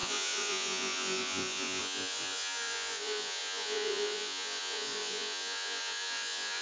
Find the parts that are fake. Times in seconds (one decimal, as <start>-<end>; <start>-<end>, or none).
0.0-6.6